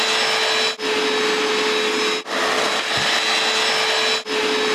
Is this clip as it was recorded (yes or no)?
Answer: yes